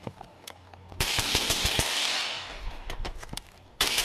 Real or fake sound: fake